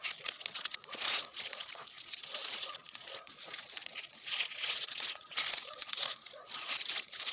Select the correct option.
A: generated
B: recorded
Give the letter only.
A